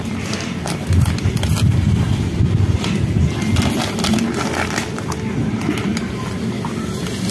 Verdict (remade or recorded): recorded